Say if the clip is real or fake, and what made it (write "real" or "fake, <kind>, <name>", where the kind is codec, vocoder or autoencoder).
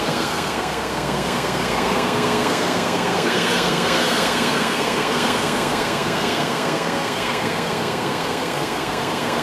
fake, codec, SNAC